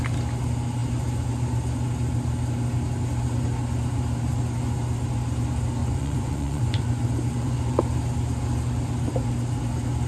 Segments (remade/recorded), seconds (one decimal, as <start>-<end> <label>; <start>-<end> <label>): 0.0-5.8 recorded; 5.8-7.8 remade; 7.8-10.1 recorded